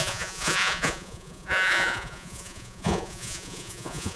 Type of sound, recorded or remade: remade